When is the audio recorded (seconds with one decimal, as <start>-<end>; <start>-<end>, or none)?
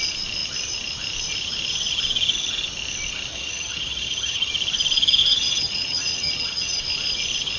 0.0-3.3; 4.5-5.2; 6.8-7.6